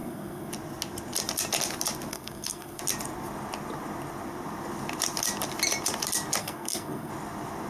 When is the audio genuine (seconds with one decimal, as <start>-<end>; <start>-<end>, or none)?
0.5-2.1; 2.8-6.4; 7.1-7.7